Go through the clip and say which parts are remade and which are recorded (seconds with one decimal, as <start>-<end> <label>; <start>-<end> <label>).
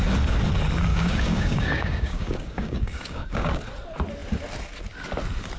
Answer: 0.0-0.9 recorded; 0.9-3.6 remade; 3.6-5.6 recorded